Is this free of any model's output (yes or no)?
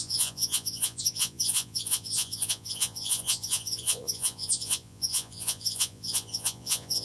no